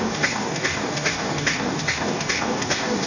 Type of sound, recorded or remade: remade